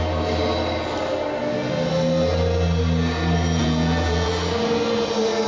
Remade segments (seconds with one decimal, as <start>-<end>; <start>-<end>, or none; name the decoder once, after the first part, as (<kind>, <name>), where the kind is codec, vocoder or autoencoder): 3.6-4.3 (vocoder, Vocos)